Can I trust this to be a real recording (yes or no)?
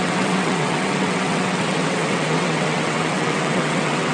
no